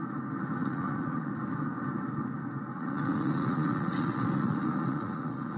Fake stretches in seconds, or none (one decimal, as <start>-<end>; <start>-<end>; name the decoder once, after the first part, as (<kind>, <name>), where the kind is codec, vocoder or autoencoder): 0.6-1.3 (vocoder, Vocos); 2.7-5.6